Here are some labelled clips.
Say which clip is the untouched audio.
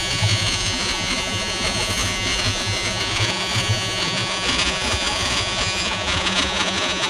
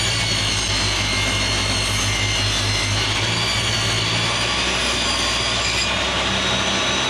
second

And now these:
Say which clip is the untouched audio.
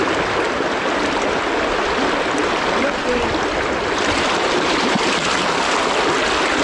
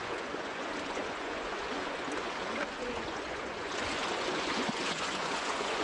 first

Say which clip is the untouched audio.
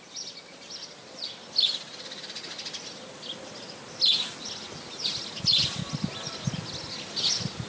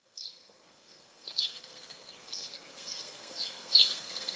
first